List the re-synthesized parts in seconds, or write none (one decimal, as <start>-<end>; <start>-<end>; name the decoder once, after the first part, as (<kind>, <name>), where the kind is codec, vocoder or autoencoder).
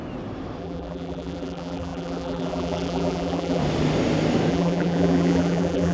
0.6-3.6 (vocoder, BigVGAN v2); 4.5-5.9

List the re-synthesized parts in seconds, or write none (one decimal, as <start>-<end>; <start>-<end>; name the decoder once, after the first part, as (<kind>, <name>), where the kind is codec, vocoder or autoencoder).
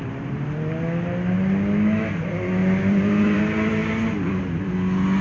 2.6-3.4 (vocoder, BigVGAN v2); 3.8-4.4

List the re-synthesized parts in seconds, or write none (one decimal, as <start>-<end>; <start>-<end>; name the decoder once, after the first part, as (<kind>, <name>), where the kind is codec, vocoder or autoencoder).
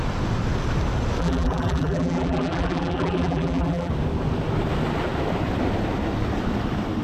1.2-3.9 (vocoder, BigVGAN v2)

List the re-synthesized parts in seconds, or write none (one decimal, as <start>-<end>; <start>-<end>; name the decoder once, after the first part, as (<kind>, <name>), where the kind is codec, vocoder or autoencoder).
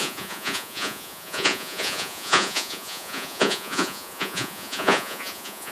0.0-5.7 (vocoder, Vocos)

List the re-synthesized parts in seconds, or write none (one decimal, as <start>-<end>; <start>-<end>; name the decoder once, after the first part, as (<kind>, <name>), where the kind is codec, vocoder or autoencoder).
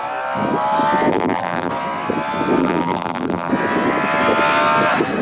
1.1-1.7 (vocoder, BigVGAN v2); 2.6-3.5